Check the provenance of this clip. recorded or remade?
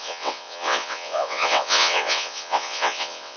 remade